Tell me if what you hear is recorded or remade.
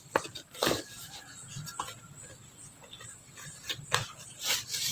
recorded